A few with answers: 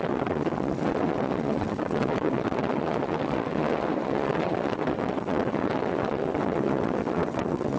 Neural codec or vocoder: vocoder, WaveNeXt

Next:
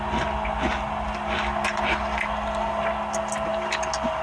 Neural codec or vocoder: none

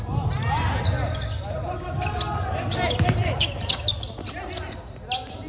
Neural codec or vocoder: none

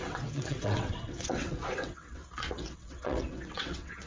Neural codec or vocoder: vocoder, WaveNeXt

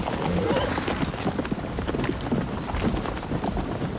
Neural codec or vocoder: none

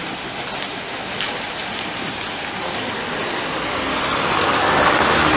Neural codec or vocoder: none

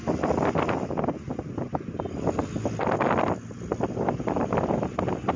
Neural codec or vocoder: none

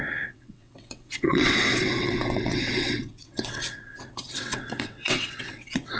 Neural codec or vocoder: vocoder, WaveNeXt